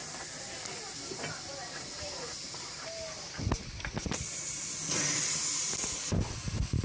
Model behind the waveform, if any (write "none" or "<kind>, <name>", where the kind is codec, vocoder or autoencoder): none